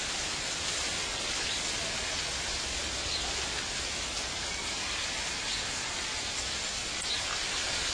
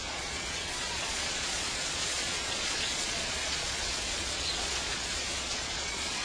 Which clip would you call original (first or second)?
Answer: first